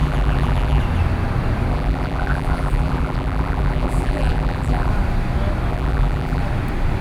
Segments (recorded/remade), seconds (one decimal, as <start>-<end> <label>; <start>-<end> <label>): 0.0-0.8 remade; 0.8-1.7 recorded; 1.7-4.9 remade; 4.9-5.7 recorded; 5.7-6.4 remade; 6.4-7.0 recorded